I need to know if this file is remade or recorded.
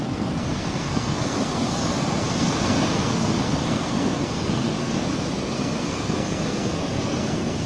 remade